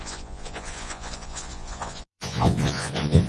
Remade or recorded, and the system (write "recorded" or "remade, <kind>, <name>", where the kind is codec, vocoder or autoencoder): remade, vocoder, Vocos